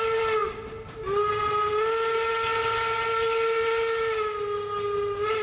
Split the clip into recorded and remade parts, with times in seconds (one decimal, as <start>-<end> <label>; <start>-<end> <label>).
0.0-5.4 recorded